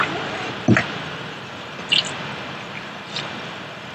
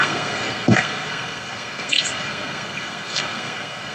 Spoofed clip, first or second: second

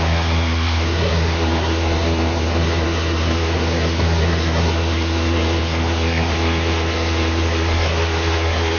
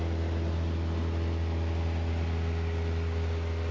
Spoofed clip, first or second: first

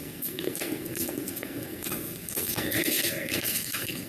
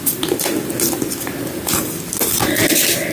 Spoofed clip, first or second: first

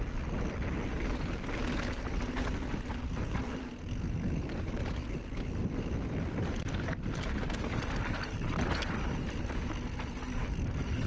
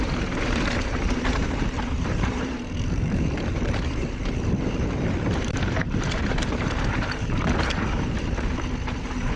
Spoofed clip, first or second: second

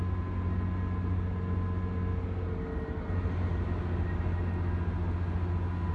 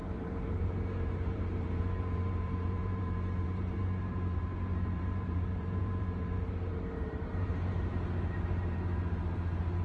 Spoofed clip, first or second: second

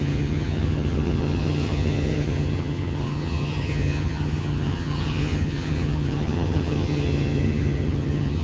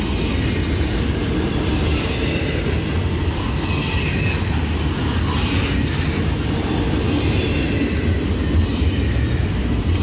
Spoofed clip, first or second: first